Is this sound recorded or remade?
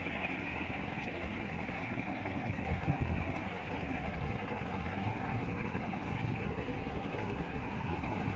remade